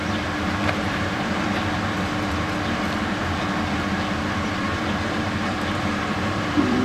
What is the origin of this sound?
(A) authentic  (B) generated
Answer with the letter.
B